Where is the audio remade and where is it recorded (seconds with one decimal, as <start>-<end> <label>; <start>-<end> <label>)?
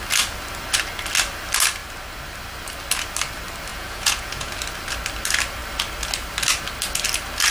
0.0-3.7 recorded; 3.7-4.5 remade; 4.5-7.5 recorded